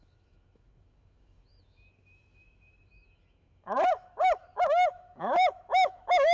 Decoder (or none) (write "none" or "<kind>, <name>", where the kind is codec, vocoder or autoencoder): autoencoder, DAC-VAE